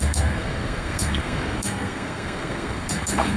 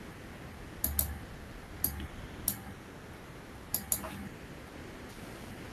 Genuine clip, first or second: second